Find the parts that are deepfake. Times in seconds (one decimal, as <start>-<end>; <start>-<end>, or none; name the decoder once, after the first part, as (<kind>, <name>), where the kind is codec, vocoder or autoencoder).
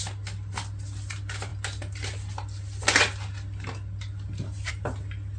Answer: none